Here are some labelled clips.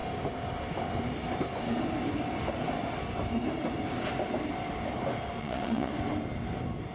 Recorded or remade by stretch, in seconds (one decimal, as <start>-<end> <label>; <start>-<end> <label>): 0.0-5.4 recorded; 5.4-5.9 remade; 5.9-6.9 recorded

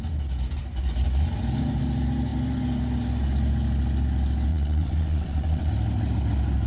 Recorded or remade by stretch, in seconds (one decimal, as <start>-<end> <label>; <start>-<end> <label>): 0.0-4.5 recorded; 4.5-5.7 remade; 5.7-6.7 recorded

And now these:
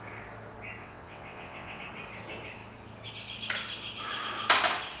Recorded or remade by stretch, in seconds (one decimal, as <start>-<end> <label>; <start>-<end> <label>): 0.0-0.8 recorded; 0.8-1.8 remade; 1.8-5.0 recorded

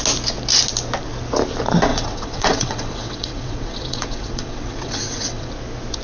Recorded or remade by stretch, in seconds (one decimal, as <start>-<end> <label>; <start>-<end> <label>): 0.0-1.9 recorded; 1.9-5.5 remade; 5.5-6.0 recorded

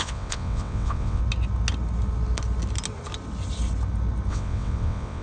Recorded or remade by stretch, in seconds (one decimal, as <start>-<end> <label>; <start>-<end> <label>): 0.0-1.2 remade; 1.2-4.3 recorded; 4.3-5.2 remade

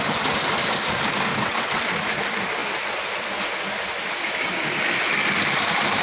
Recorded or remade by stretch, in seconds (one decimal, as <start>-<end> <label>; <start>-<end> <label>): 0.0-1.3 recorded; 1.3-1.8 remade; 1.8-6.0 recorded

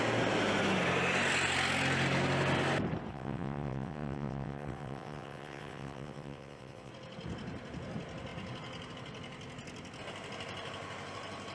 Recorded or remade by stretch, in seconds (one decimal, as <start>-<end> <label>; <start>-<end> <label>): 0.0-3.1 recorded; 3.1-6.9 remade; 6.9-11.5 recorded

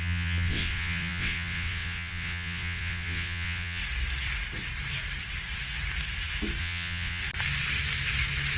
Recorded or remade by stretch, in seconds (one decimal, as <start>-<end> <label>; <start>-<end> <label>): 0.0-3.8 remade; 3.8-6.6 recorded; 6.6-7.2 remade; 7.2-8.6 recorded